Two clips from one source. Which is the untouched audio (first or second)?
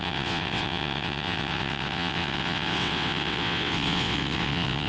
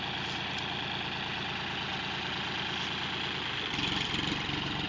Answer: second